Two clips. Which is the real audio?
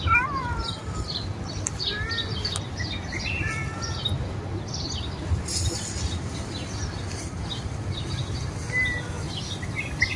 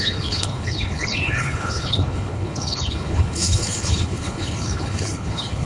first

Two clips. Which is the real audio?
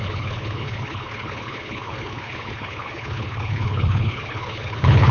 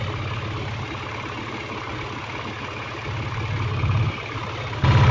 second